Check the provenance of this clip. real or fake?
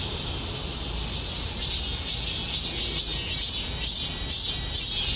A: real